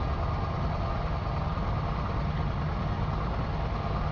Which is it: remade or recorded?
recorded